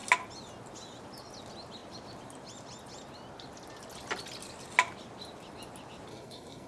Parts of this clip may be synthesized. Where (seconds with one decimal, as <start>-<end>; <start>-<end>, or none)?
6.1-6.7